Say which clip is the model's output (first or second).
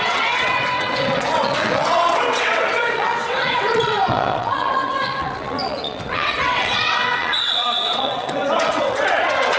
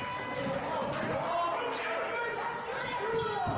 first